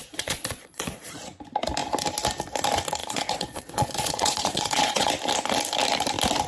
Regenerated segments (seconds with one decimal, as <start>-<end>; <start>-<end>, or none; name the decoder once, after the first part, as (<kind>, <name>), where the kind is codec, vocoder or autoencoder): 0.0-1.2 (vocoder, Vocos); 3.0-5.1